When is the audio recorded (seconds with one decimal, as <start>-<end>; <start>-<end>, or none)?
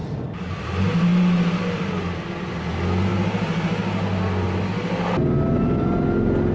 0.0-6.5